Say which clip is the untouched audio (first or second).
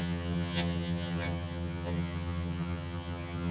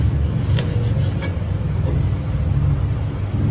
second